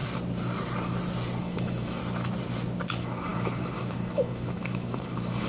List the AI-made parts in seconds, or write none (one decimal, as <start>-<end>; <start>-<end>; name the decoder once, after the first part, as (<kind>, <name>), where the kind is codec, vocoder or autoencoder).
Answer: 1.4-2.0 (autoencoder, DAC-VAE); 2.9-5.5